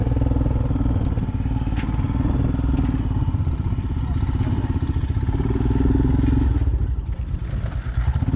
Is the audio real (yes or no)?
yes